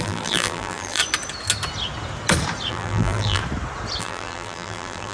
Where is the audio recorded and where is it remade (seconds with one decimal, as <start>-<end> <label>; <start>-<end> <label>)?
0.0-1.0 remade; 1.0-2.7 recorded; 2.7-3.4 remade; 3.4-4.0 recorded; 4.0-5.1 remade